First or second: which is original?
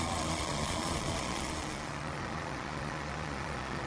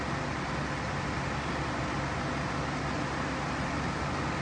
second